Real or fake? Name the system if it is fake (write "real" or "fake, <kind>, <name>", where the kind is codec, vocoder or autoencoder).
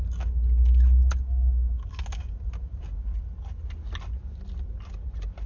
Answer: real